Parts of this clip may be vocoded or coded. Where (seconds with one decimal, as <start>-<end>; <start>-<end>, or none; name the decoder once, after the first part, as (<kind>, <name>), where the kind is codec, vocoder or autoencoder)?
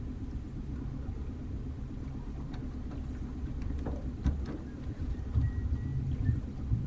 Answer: 3.3-5.5 (vocoder, BigVGAN v2)